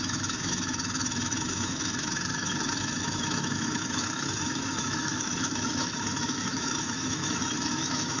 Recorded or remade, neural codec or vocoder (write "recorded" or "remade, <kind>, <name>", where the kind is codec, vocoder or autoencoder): remade, autoencoder, DAC-VAE